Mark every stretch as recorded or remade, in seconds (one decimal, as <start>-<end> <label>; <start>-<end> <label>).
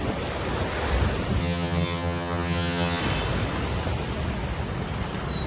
0.0-1.4 recorded; 1.4-3.0 remade; 3.0-5.5 recorded